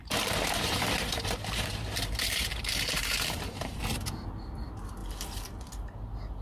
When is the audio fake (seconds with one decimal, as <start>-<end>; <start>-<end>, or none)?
0.0-3.8; 5.0-5.5